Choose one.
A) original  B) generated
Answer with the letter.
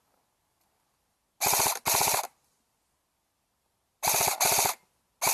A